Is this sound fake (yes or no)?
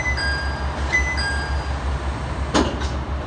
no